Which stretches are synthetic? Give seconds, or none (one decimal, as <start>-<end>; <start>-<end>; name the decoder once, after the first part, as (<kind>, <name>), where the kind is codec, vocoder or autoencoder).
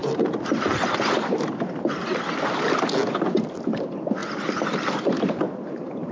0.0-1.4 (vocoder, BigVGAN v2); 4.2-6.1